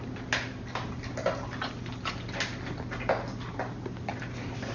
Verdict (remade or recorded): recorded